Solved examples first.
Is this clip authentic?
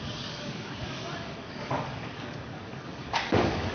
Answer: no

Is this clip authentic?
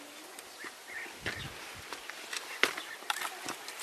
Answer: yes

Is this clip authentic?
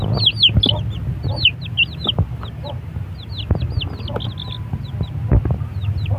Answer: yes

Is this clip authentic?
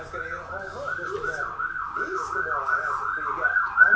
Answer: yes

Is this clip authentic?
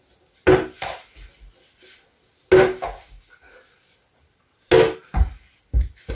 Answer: yes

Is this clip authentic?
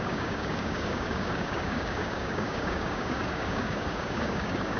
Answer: no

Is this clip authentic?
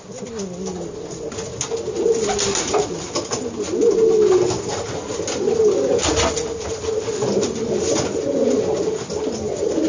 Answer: yes